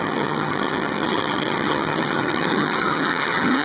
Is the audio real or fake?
fake